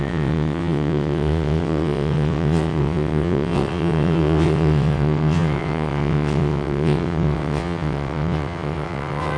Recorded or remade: remade